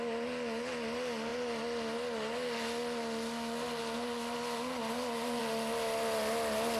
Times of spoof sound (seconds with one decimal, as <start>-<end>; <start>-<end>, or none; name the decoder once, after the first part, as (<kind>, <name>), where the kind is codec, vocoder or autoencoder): none